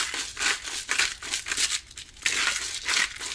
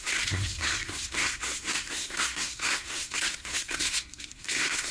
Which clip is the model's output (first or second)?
second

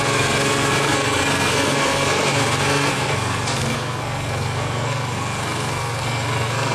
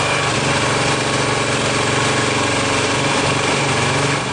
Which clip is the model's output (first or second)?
first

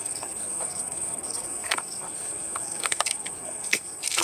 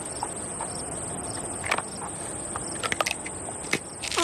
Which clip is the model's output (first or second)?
first